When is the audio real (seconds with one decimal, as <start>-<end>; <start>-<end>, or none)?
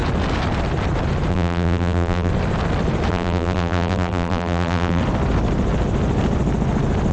0.0-1.3; 2.3-3.1; 5.0-7.1